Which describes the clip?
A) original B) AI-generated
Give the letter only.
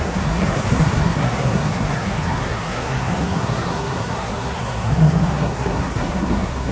B